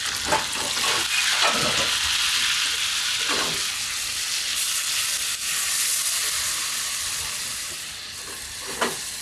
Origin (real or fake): real